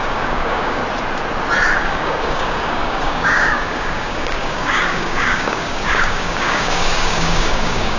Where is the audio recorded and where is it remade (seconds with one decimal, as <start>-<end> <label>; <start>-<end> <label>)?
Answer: 0.0-0.8 remade; 0.8-1.8 recorded; 1.8-8.0 remade